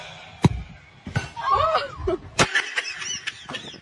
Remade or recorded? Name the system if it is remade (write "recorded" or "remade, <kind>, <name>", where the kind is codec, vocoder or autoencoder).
recorded